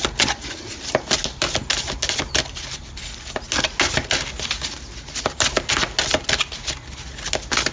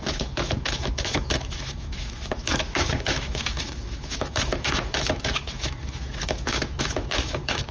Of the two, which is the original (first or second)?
first